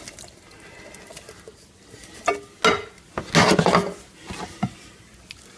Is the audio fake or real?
real